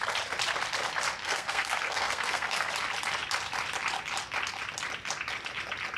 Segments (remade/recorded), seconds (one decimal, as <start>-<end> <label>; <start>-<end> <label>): 0.0-1.2 recorded; 1.2-2.7 remade; 2.7-6.0 recorded